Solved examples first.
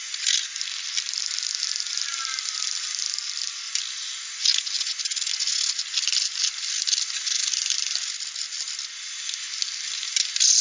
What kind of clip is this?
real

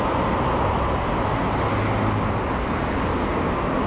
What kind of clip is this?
real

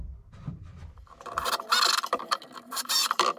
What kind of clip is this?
fake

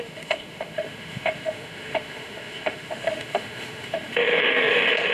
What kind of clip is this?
fake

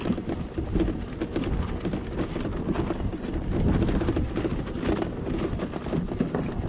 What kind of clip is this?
real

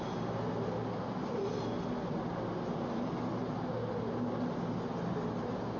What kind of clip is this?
real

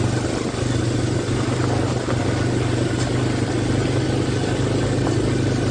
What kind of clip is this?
real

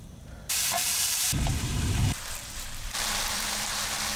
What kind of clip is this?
fake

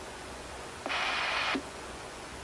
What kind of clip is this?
fake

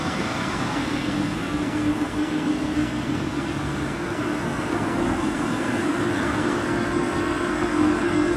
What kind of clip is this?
fake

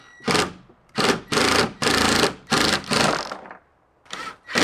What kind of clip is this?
real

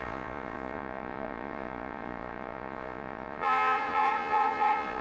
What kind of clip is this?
fake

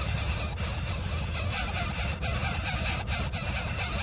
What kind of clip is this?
real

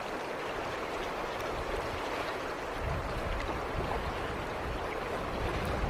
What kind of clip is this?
real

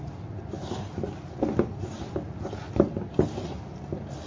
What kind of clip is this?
real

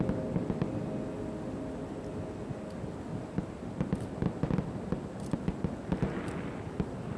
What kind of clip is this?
real